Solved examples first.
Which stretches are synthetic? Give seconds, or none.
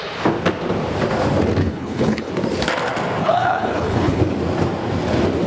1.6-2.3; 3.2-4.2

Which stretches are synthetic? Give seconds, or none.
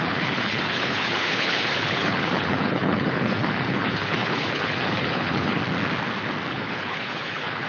0.0-5.6; 6.5-7.7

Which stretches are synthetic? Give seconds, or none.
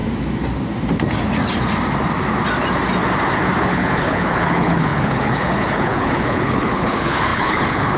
3.6-8.0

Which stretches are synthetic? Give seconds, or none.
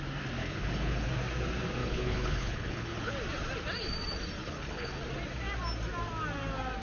0.4-1.1; 1.8-3.1; 4.4-4.9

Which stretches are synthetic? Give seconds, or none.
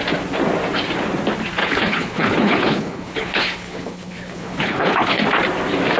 1.6-5.2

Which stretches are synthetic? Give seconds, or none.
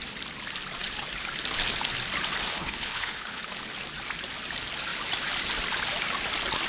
2.5-3.5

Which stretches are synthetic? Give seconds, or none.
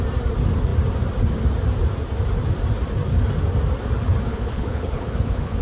4.3-5.6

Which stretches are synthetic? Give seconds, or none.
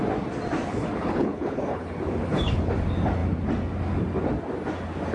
0.7-2.7